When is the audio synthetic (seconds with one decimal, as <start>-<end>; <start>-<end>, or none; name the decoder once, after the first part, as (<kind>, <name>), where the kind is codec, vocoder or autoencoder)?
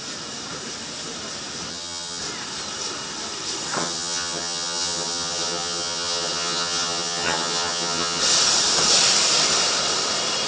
1.7-2.2 (vocoder, HiFi-GAN); 3.8-8.2